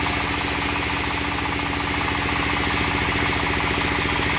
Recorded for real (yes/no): yes